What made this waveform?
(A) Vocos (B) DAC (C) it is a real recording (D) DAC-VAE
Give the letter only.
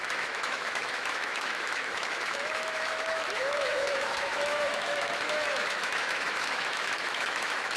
D